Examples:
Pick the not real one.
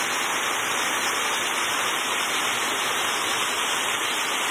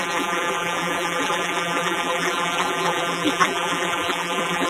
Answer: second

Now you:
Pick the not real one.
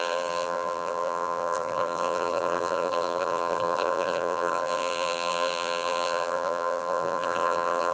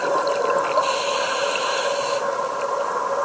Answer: first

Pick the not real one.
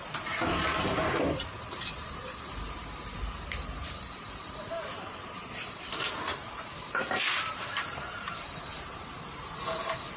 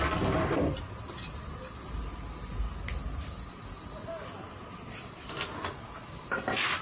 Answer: first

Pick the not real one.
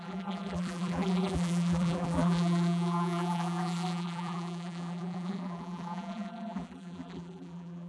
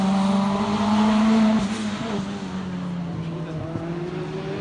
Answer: first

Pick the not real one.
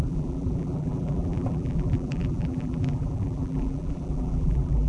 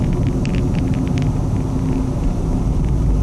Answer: first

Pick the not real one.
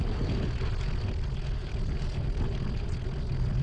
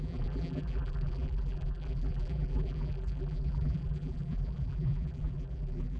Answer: second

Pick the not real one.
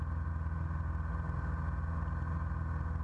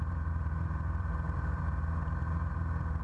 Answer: second